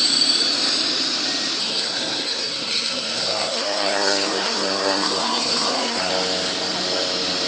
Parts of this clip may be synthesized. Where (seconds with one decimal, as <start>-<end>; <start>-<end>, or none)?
1.6-6.1